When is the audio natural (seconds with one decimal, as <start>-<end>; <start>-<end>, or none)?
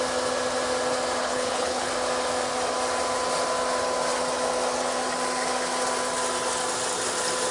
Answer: 0.0-1.2; 1.9-7.5